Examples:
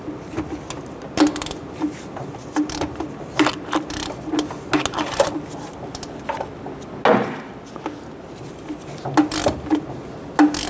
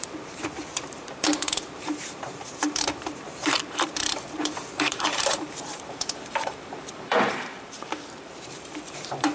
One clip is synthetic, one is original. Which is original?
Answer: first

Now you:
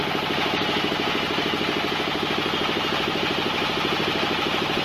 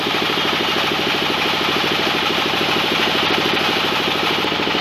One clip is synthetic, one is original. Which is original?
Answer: first